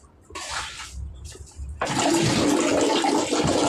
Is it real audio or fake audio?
real